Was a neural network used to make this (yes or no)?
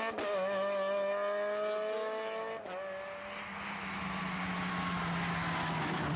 no